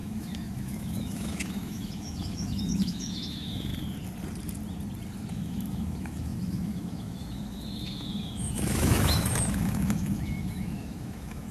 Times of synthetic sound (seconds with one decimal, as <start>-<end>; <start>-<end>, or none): 0.0-3.7; 5.3-11.5